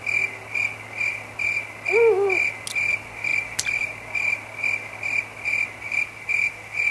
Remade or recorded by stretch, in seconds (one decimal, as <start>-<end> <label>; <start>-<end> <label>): 0.0-6.9 recorded